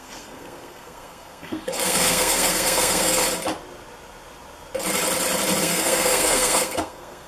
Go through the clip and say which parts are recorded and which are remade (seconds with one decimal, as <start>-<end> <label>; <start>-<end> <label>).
0.0-3.2 remade; 3.2-5.6 recorded; 5.6-7.3 remade